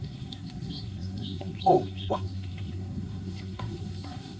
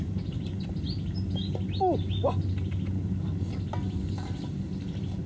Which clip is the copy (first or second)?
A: first